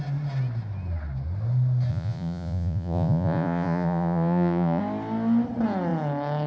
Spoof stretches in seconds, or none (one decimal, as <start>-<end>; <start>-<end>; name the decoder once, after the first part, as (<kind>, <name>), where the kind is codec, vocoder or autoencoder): 1.9-4.8 (vocoder, Vocos)